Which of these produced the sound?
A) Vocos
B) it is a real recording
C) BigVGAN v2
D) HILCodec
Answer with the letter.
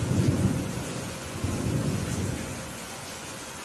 A